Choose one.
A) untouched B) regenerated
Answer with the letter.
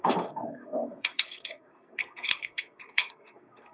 B